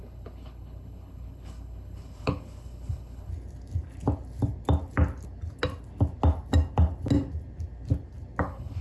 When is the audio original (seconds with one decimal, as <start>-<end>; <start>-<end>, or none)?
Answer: 3.3-8.4